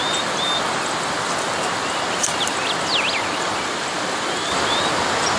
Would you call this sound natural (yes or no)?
yes